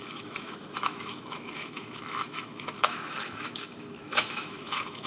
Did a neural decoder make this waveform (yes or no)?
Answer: yes